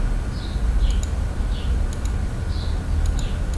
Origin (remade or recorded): recorded